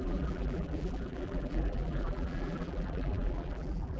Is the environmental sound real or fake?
fake